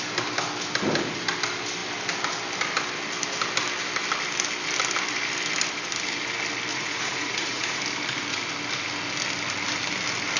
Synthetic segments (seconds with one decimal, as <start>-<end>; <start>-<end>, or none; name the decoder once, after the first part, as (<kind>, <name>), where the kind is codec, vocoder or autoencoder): 6.7-7.8 (vocoder, Vocos)